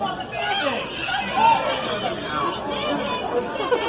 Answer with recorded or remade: recorded